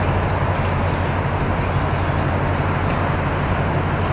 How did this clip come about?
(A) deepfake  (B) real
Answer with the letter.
B